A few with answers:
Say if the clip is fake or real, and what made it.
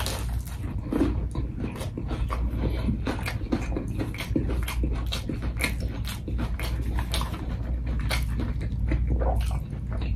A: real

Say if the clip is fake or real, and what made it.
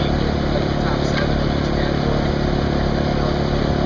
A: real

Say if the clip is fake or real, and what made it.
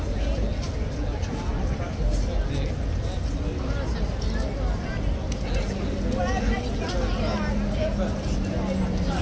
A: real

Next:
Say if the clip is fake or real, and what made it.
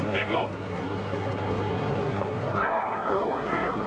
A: fake, codec, SNAC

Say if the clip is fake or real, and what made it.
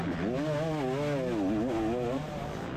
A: real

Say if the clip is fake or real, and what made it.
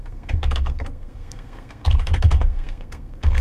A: fake, codec, SNAC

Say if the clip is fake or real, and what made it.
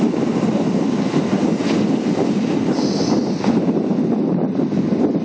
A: real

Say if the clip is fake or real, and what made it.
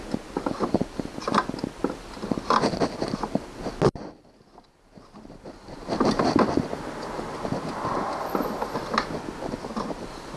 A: real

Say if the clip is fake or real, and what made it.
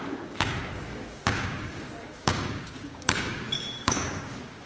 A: fake, codec, DAC